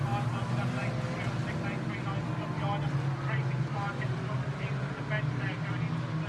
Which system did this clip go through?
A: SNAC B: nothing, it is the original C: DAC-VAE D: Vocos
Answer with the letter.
B